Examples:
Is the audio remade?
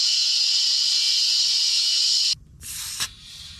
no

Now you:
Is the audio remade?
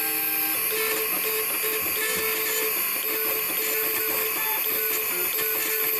no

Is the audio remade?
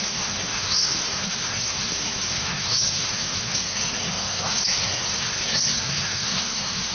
yes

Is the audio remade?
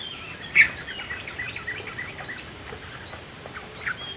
no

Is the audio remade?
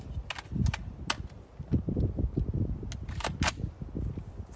no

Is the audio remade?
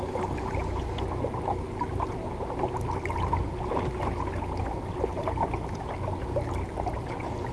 no